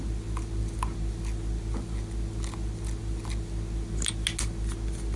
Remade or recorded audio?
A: recorded